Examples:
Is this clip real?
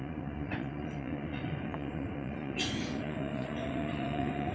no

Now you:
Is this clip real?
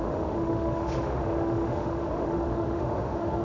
no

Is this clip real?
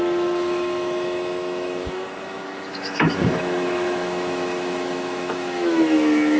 no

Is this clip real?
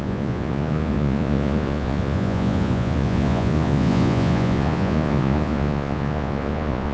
no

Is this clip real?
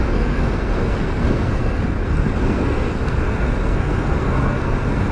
no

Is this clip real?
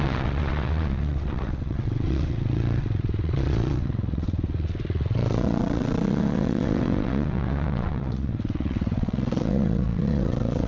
no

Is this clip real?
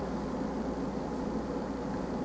yes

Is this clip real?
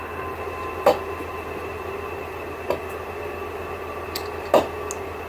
yes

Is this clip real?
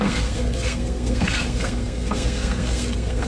no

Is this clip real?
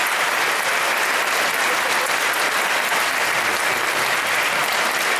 yes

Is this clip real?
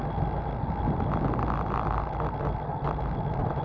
yes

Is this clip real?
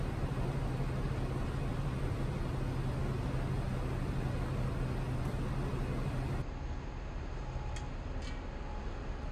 yes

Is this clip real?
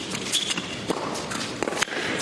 no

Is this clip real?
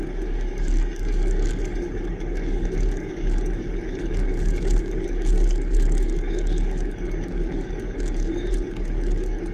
no